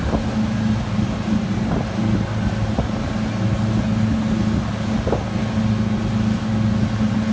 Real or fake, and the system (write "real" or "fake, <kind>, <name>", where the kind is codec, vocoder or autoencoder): real